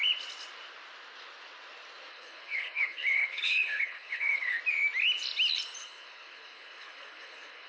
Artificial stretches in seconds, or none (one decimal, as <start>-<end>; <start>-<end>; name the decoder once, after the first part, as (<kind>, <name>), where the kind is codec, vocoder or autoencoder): 2.1-4.6 (codec, HILCodec); 5.8-7.7